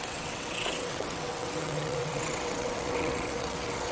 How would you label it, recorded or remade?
remade